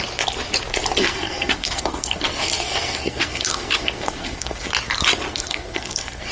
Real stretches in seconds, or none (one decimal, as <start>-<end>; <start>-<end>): 0.0-1.0; 4.7-5.3